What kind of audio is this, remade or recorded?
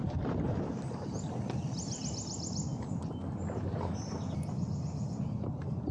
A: recorded